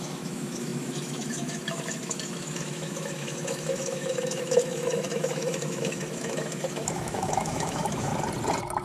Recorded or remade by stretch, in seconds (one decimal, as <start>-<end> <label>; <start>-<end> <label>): 0.0-8.1 remade; 8.1-8.8 recorded